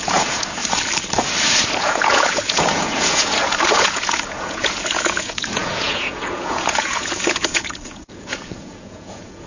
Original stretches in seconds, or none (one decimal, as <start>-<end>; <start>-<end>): 0.6-1.8